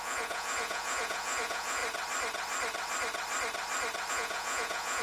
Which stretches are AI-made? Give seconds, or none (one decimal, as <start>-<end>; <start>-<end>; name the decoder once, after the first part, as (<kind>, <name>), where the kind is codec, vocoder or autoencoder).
0.0-1.8 (vocoder, Vocos); 4.1-5.0